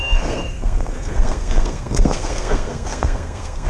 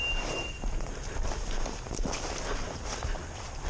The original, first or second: second